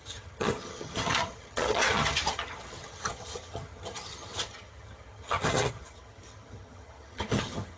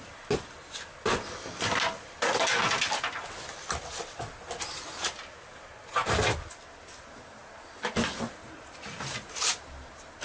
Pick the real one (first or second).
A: second